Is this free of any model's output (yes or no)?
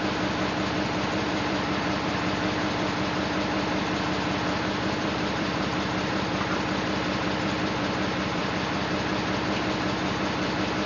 no